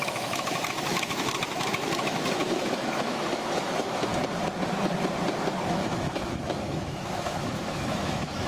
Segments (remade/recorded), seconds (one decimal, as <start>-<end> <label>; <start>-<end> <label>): 0.0-4.1 remade; 4.1-5.7 recorded; 5.7-8.5 remade